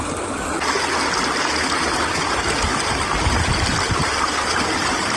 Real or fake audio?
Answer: real